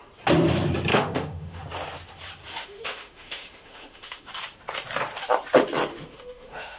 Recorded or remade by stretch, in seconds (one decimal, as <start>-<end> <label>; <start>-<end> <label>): 0.0-0.9 recorded; 0.9-1.6 remade; 1.6-2.6 recorded; 2.6-4.3 remade; 4.3-5.9 recorded; 5.9-6.8 remade